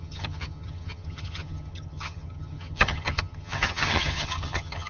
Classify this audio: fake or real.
fake